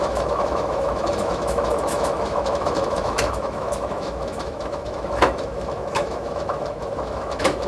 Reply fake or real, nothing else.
fake